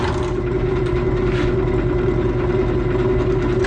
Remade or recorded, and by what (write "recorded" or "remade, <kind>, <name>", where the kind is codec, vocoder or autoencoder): recorded